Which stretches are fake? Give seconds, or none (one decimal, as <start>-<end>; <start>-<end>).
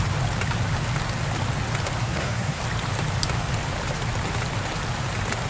2.0-2.6